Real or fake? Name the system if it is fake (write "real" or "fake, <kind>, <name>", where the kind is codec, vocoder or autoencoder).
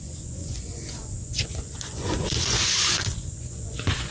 fake, vocoder, Vocos